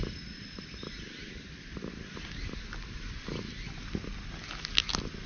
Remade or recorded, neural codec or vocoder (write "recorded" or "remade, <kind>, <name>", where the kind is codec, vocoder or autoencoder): recorded